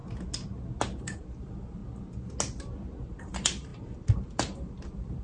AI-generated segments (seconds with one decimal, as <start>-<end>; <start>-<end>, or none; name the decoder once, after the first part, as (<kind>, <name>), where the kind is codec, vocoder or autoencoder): 1.0-1.8 (vocoder, BigVGAN v2); 3.0-5.2